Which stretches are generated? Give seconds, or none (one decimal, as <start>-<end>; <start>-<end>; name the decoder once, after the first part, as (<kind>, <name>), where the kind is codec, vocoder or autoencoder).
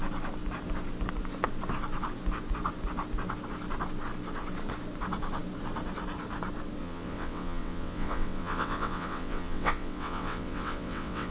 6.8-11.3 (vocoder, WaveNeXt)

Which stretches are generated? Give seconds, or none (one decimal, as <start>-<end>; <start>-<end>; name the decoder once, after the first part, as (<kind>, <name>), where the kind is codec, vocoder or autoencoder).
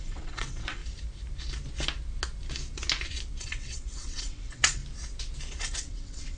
0.0-0.8 (vocoder, WaveNeXt); 3.4-4.8; 5.6-6.4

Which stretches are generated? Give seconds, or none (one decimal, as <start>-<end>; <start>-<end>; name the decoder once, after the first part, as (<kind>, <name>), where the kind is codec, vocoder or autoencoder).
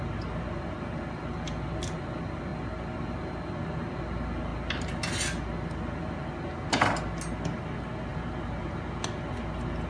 none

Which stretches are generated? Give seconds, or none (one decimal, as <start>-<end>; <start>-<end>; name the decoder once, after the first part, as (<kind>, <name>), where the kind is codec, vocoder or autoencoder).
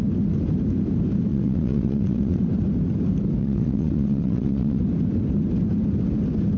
1.3-2.4 (vocoder, WaveNeXt); 3.4-4.8